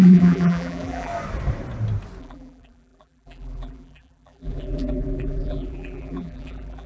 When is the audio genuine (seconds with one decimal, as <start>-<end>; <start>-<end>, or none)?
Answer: 1.1-2.2